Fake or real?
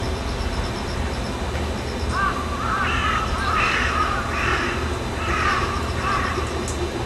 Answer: real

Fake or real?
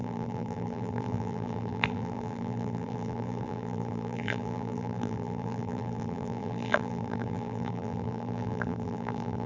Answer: fake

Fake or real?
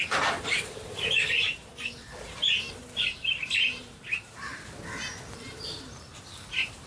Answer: fake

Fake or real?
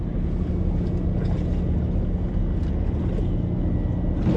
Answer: real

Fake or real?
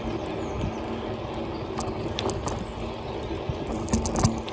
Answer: real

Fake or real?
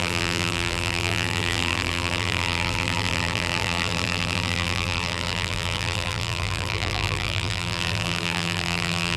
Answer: fake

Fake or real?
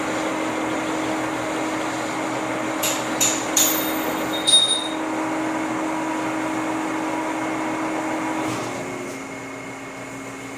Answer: real